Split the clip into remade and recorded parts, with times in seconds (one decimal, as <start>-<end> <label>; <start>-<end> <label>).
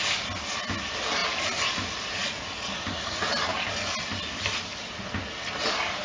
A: 0.0-6.0 recorded